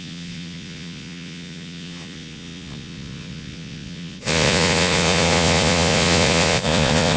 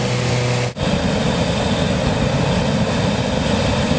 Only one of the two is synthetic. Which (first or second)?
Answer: first